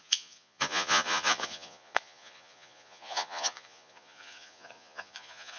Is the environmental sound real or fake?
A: fake